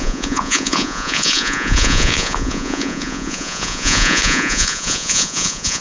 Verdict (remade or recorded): remade